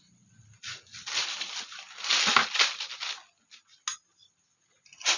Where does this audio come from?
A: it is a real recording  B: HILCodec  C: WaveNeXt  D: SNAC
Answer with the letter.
A